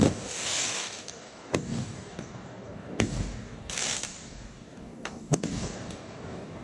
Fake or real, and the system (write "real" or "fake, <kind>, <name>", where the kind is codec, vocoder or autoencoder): fake, codec, DAC